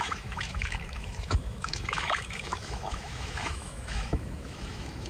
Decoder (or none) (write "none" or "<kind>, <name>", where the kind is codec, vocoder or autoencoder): autoencoder, DAC-VAE